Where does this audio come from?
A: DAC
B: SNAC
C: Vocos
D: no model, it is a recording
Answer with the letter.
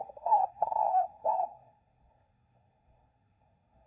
B